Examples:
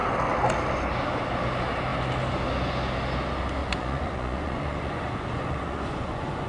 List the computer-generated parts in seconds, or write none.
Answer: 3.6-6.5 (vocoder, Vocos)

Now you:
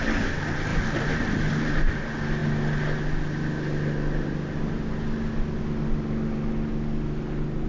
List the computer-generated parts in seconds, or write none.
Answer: 0.7-2.0 (vocoder, BigVGAN v2)

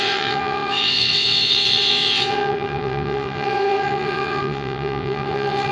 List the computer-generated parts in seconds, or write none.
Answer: 0.0-5.7 (vocoder, WaveNeXt)

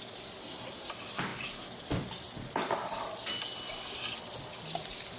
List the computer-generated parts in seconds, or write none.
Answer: 0.4-0.9 (codec, SNAC)

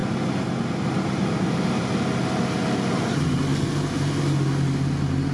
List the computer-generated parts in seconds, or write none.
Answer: none

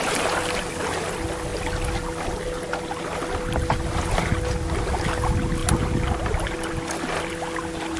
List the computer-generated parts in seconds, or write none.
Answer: none

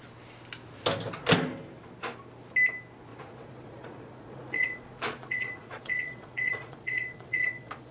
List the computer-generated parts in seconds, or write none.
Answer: 3.1-7.9 (vocoder, Vocos)

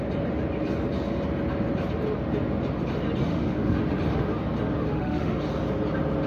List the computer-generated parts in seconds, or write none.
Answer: 3.3-3.8 (autoencoder, DAC-VAE); 4.8-5.4